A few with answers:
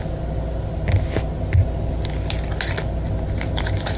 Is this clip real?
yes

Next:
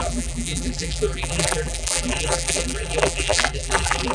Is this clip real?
no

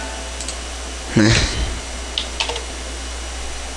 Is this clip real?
yes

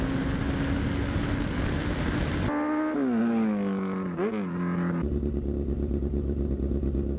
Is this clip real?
yes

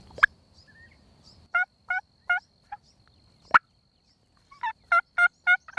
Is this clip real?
yes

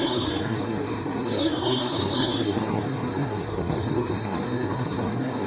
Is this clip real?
no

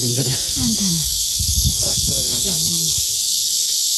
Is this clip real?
no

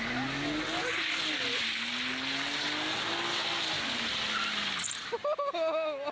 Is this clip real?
yes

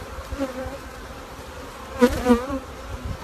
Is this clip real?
no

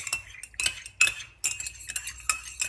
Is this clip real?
yes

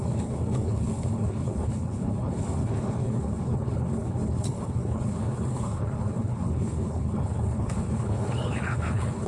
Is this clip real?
no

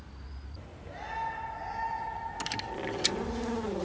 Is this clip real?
yes